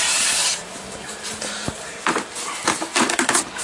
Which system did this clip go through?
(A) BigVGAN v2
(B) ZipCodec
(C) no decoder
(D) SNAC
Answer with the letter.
A